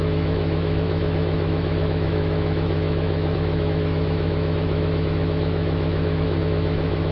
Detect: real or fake fake